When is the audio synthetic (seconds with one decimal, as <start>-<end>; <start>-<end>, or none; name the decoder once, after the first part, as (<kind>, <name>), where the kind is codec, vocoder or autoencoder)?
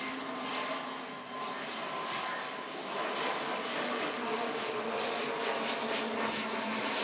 3.8-5.2 (autoencoder, DAC-VAE)